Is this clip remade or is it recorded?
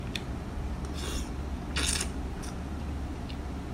recorded